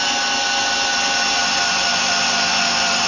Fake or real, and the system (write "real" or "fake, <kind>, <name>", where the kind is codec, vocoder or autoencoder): real